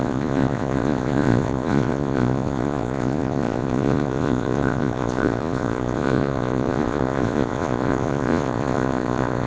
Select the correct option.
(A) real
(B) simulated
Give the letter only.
B